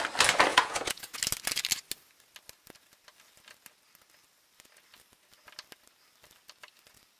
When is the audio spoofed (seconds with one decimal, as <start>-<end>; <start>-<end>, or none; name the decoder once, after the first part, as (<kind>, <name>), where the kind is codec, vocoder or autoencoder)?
0.5-1.2 (vocoder, Vocos)